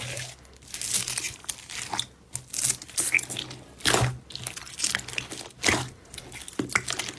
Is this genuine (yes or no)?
yes